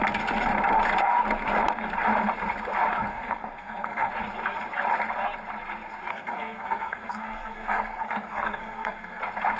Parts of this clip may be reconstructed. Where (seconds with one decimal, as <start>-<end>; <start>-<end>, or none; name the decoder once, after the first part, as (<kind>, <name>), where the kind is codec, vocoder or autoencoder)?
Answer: 3.1-4.1 (codec, SNAC); 6.1-9.2

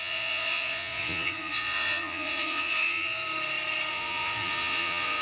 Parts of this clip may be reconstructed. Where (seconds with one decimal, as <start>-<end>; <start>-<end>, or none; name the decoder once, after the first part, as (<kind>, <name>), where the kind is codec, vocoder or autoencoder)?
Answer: 0.0-3.2 (vocoder, Vocos); 3.9-5.2